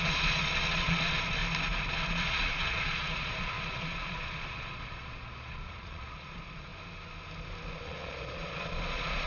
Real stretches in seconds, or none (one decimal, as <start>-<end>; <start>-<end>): 1.4-1.9; 6.7-7.7